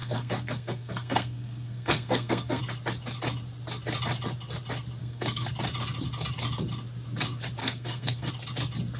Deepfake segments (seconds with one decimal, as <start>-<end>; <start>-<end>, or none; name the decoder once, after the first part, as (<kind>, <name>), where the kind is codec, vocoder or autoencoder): 0.0-2.6 (codec, SNAC); 5.0-5.5; 7.6-8.3